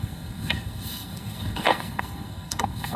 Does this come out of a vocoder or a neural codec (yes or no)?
yes